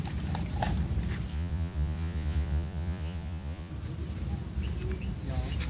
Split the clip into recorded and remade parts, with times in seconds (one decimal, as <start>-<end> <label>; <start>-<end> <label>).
0.0-1.3 recorded; 1.3-3.7 remade; 3.7-5.7 recorded